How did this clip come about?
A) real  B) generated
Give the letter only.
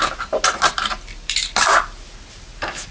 A